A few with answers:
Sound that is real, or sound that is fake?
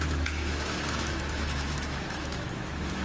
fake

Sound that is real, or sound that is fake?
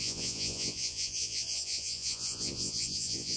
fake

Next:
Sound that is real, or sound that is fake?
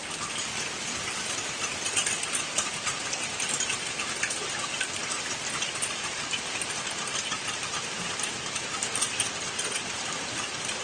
fake